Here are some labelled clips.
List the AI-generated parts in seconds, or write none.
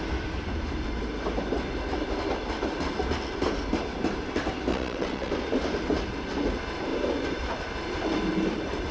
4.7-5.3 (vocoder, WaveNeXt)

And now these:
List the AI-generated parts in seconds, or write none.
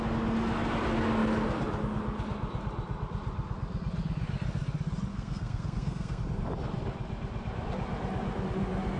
5.1-6.2 (codec, SNAC)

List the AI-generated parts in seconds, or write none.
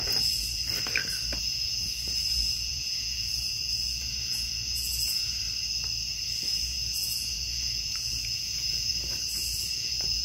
0.0-0.6 (vocoder, Vocos); 1.4-5.4; 6.2-8.9; 9.6-10.2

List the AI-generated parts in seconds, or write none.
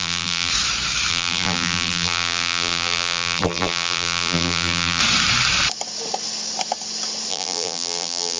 0.0-0.5 (vocoder, BigVGAN v2); 1.1-5.0; 7.3-8.4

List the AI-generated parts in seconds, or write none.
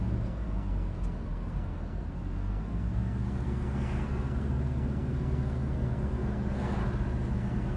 0.0-6.8 (codec, SNAC); 7.3-7.8